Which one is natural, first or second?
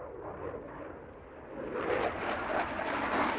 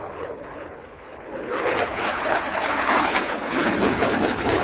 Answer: first